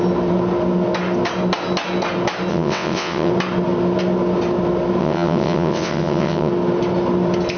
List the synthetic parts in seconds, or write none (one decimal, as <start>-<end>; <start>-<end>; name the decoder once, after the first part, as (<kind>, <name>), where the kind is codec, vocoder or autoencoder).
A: 2.5-3.3 (vocoder, WaveNeXt); 5.0-6.5